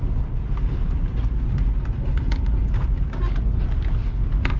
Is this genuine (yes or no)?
yes